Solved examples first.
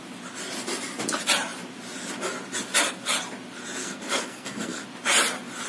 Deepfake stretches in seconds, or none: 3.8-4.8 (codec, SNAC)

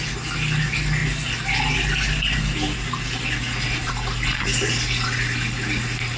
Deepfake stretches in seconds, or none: none

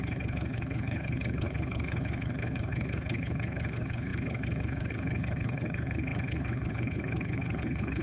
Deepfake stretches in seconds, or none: 0.0-8.0 (codec, HILCodec)

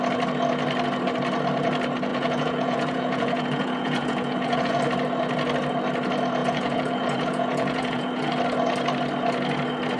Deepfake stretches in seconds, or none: 2.1-4.8 (vocoder, Vocos); 6.4-8.3

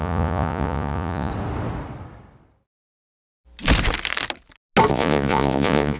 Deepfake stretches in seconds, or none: 0.0-1.3 (vocoder, Vocos); 4.9-6.0

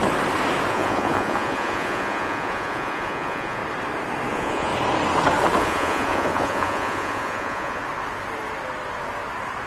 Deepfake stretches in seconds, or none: 0.7-3.6 (vocoder, Vocos); 4.3-4.7; 5.6-7.8

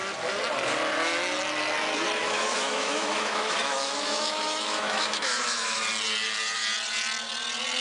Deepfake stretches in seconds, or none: 2.2-5.8 (autoencoder, DAC-VAE)